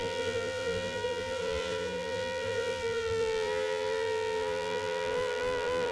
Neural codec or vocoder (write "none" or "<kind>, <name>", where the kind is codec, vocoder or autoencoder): vocoder, BigVGAN v2